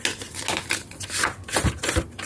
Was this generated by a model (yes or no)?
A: no